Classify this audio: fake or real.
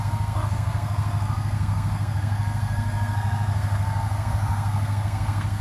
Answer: fake